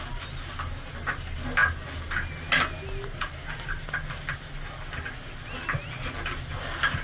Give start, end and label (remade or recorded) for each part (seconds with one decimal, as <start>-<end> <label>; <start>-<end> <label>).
0.0-7.0 recorded